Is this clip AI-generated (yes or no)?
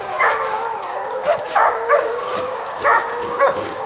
yes